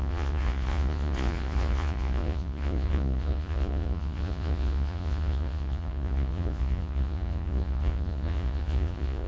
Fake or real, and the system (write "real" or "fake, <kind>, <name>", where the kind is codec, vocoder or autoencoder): fake, vocoder, Vocos